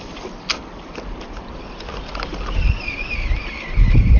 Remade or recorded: recorded